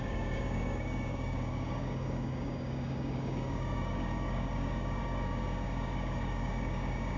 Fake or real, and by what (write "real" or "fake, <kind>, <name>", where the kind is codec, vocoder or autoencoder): fake, codec, DAC